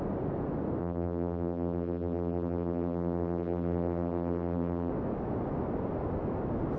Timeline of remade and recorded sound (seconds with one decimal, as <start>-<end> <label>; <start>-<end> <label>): 0.0-0.8 recorded; 0.8-4.9 remade; 4.9-6.8 recorded